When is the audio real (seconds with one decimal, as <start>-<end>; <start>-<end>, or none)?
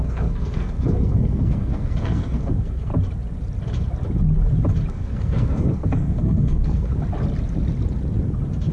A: 2.9-4.9; 6.9-8.7